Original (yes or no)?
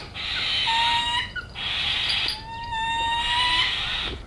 yes